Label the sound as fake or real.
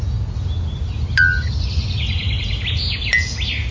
real